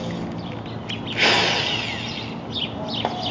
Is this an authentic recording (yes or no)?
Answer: yes